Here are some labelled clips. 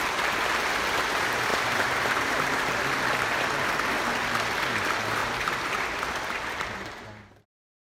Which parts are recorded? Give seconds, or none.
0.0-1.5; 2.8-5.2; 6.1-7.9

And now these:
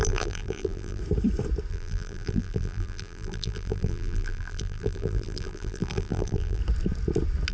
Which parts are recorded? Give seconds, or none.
1.0-1.7; 6.6-7.5

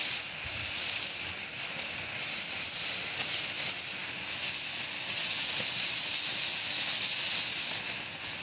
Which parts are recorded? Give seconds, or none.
3.3-8.4